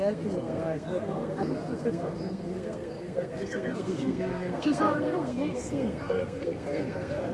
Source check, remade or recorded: remade